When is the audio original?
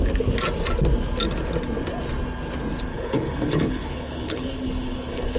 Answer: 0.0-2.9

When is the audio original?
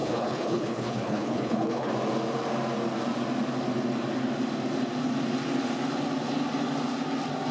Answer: 1.9-7.5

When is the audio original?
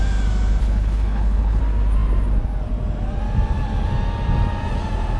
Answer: 0.0-0.6; 1.6-5.2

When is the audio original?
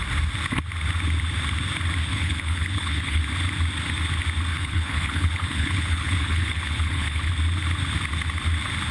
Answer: 0.0-2.0; 3.2-4.5; 7.3-8.9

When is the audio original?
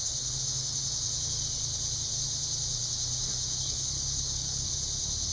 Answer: 0.4-3.6; 4.7-5.3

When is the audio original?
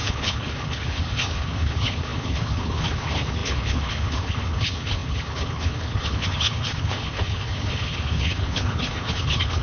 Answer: none